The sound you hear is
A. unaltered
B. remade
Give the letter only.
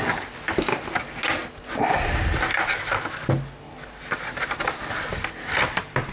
A